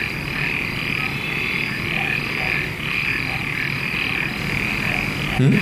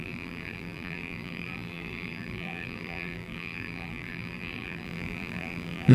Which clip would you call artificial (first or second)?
second